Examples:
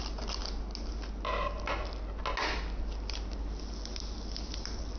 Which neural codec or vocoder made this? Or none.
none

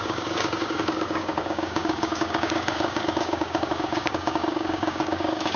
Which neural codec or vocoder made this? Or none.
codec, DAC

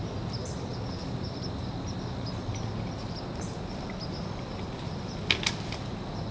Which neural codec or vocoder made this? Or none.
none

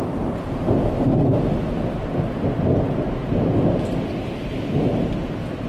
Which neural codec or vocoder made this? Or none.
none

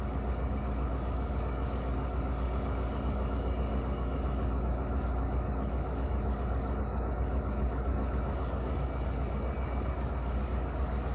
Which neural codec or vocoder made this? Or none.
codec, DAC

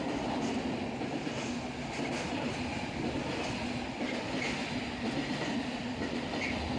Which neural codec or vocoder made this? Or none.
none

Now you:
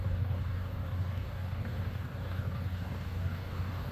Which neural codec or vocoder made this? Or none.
codec, DAC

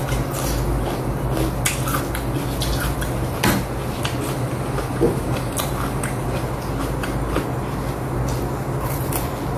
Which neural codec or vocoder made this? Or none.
none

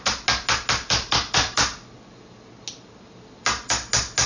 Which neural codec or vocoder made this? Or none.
none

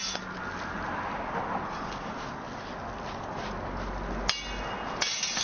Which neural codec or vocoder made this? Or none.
none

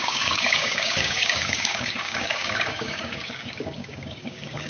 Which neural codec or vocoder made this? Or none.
codec, DAC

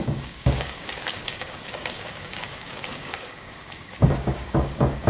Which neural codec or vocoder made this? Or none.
codec, DAC